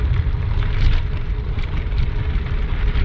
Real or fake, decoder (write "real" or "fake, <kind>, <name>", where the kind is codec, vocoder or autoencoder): real